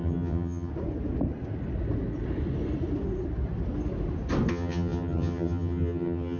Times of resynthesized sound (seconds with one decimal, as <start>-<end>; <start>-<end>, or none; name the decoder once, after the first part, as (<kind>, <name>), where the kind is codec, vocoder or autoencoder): 0.0-0.7 (vocoder, HiFi-GAN); 4.5-6.4